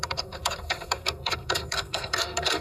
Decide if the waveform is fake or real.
fake